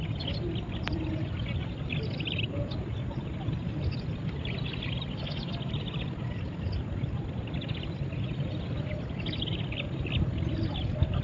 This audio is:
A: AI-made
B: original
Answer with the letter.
B